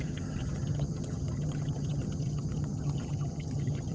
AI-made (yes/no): yes